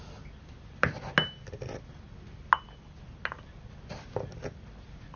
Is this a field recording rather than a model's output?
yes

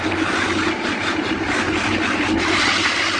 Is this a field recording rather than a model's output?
yes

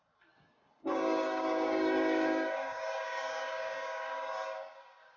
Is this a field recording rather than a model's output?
no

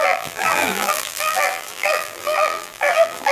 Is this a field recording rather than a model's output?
no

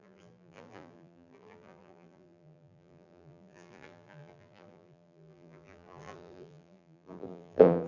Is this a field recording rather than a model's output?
no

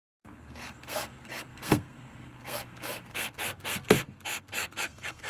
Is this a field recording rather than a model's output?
no